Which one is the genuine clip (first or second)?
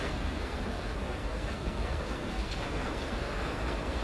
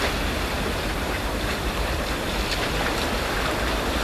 second